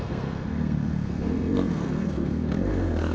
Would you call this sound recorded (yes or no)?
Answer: no